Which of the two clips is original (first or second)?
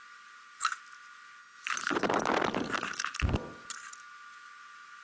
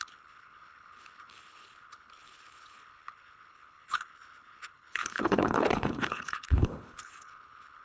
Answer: first